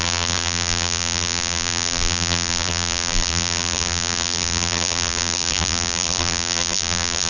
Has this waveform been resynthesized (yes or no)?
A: yes